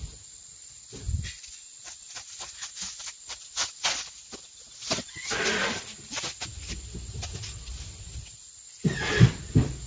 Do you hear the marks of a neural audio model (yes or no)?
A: no